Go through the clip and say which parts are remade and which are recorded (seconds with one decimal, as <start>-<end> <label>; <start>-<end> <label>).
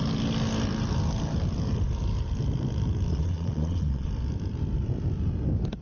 0.0-3.1 recorded; 3.1-4.1 remade; 4.1-5.8 recorded